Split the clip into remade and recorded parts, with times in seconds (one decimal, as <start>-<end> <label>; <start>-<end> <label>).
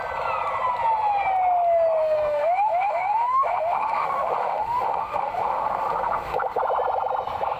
0.0-2.0 recorded; 2.0-6.6 remade; 6.6-7.6 recorded